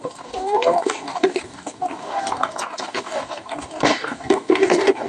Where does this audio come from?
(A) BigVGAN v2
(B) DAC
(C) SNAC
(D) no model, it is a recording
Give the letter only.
B